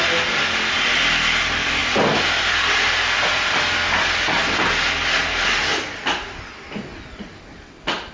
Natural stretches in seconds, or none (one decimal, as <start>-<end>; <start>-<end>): 0.0-6.9